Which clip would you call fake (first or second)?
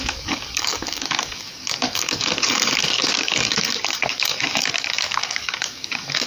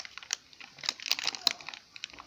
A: first